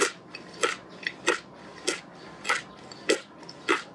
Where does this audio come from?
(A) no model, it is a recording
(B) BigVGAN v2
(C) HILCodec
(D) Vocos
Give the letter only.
A